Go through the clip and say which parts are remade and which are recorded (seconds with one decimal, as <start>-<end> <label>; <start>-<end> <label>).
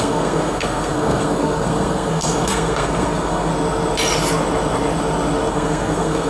0.0-3.5 remade; 3.5-5.5 recorded; 5.5-6.3 remade